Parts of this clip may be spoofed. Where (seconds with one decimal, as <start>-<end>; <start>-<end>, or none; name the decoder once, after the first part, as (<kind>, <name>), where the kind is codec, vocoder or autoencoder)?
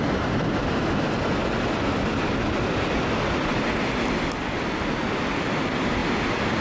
1.4-2.1 (vocoder, BigVGAN v2); 6.0-6.6